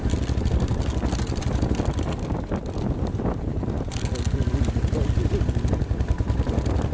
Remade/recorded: recorded